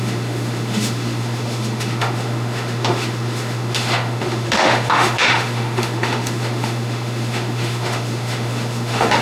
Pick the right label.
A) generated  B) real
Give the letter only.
A